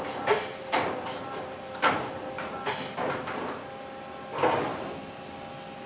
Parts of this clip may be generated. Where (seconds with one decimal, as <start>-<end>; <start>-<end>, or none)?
none